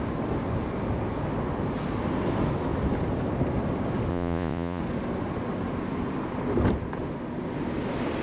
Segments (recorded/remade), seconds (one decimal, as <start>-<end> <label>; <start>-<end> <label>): 0.0-4.1 recorded; 4.1-4.8 remade; 4.8-8.2 recorded